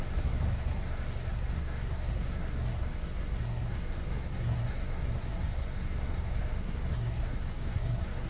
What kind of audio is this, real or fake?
fake